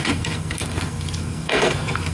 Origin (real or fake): fake